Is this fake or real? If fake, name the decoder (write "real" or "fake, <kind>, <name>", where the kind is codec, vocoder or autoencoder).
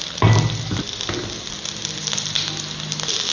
real